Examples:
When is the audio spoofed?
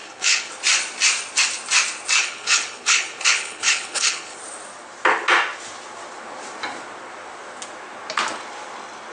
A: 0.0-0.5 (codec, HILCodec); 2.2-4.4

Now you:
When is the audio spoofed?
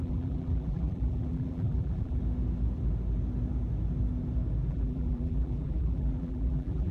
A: 0.0-2.2 (vocoder, BigVGAN v2); 4.7-6.9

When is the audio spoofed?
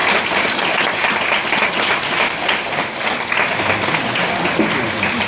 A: none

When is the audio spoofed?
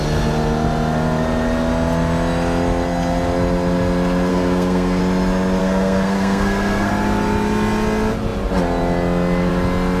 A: 4.3-5.0 (codec, SNAC); 5.6-6.9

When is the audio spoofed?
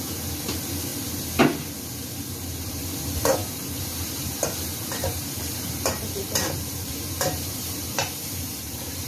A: 0.0-0.9 (vocoder, BigVGAN v2); 1.8-9.1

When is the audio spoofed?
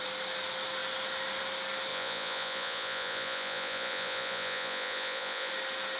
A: 1.9-5.5 (vocoder, Vocos)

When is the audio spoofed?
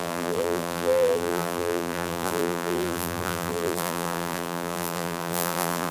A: 0.0-5.9 (vocoder, BigVGAN v2)